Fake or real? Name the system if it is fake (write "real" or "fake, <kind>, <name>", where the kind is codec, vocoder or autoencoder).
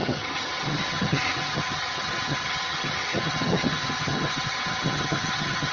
fake, vocoder, HiFi-GAN